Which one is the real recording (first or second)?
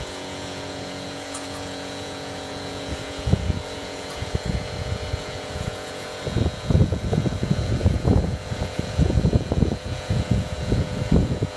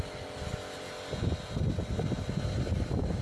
second